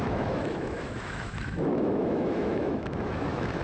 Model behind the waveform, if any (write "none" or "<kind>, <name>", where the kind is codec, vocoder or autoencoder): autoencoder, DAC-VAE